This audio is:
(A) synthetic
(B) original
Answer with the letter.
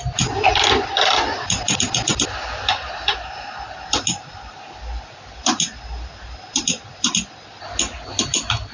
B